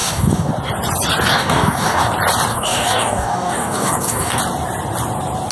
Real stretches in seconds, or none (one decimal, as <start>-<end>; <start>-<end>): 0.5-1.3; 2.1-2.5; 4.4-5.5